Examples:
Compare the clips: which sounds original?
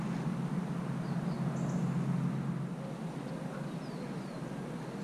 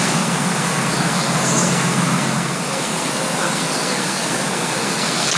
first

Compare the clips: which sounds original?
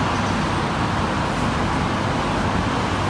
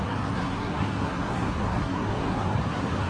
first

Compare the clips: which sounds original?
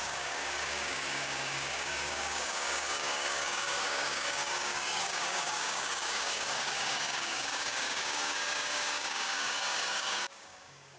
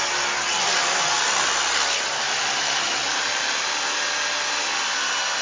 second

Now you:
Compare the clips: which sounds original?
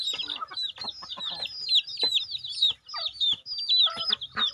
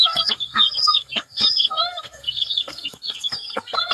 first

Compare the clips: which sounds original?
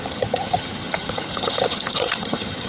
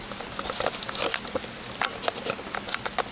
second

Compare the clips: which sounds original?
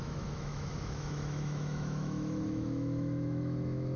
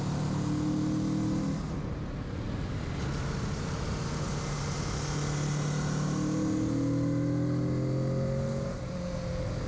second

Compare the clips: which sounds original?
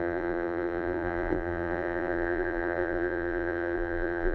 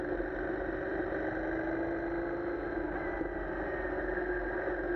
second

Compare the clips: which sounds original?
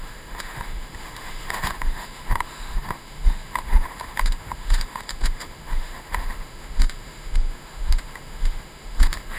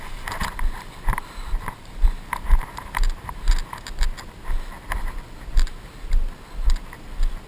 second